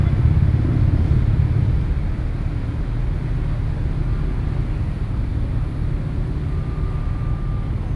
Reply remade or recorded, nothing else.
recorded